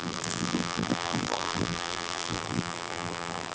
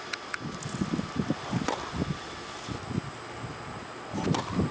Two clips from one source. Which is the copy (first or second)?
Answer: first